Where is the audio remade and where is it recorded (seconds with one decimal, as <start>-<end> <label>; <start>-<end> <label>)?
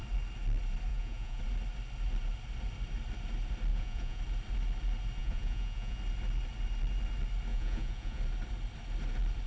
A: 0.0-0.9 recorded; 0.9-1.4 remade; 1.4-3.7 recorded; 3.7-4.2 remade; 4.2-5.2 recorded; 5.2-6.0 remade; 6.0-7.5 recorded; 7.5-8.2 remade; 8.2-9.5 recorded